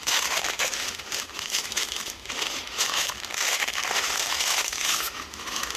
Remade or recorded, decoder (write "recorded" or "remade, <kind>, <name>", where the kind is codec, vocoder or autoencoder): remade, autoencoder, DAC-VAE